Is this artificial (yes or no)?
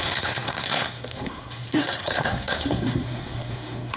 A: yes